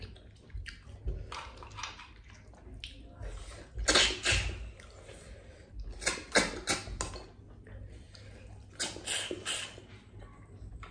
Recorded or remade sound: recorded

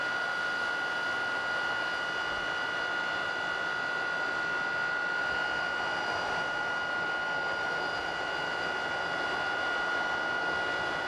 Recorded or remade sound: recorded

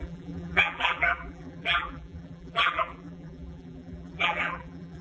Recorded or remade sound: remade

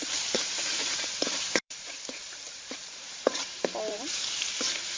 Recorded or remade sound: remade